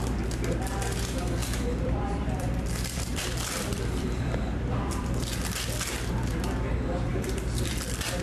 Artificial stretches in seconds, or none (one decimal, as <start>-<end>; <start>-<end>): 1.4-5.2; 7.1-7.7